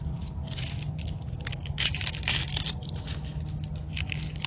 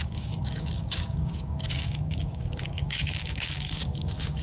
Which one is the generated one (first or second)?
second